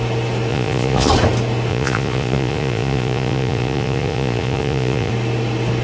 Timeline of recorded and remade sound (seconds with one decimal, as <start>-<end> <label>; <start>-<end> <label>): 0.0-0.5 recorded; 0.5-1.1 remade; 1.1-1.7 recorded; 1.7-5.1 remade; 5.1-5.8 recorded